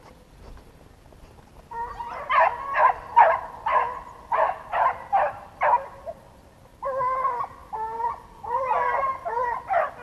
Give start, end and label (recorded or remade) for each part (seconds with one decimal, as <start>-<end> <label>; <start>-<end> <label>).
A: 0.0-10.0 recorded

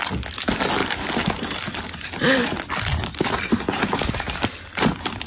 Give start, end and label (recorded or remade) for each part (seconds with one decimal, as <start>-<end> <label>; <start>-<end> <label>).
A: 0.0-0.8 recorded; 0.8-4.0 remade; 4.0-5.3 recorded

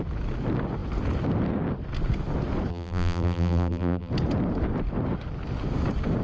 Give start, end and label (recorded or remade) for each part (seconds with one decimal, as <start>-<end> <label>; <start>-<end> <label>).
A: 0.0-2.7 recorded; 2.7-4.1 remade; 4.1-6.2 recorded

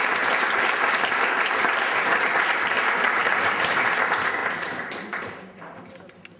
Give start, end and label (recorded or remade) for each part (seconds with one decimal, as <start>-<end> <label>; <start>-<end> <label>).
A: 0.0-3.2 recorded; 3.2-3.9 remade; 3.9-4.4 recorded; 4.4-5.8 remade; 5.8-6.4 recorded

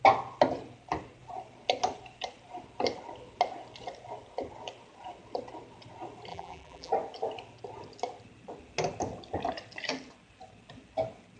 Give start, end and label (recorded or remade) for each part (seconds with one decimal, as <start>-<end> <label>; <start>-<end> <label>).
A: 0.0-6.3 recorded; 6.3-6.9 remade; 6.9-11.4 recorded

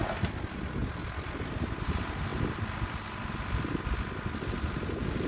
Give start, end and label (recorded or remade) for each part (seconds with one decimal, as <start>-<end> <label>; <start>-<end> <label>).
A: 0.0-0.8 recorded; 0.8-1.8 remade; 1.8-2.3 recorded; 2.3-2.9 remade; 2.9-5.3 recorded

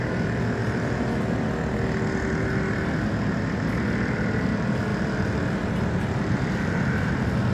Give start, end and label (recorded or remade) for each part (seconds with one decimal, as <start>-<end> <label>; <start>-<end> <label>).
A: 0.0-7.5 recorded